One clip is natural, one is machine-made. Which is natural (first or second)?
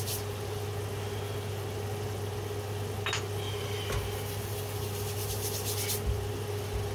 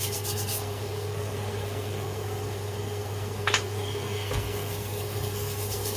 first